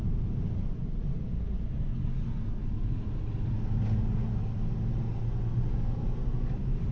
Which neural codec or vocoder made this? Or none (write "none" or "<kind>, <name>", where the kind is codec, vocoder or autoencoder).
none